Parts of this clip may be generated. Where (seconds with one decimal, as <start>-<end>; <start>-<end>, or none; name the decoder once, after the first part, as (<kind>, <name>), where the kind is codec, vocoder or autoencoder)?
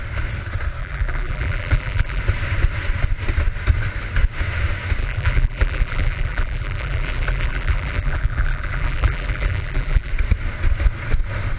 0.8-2.2 (vocoder, BigVGAN v2); 5.0-10.1